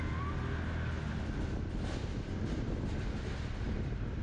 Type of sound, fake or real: real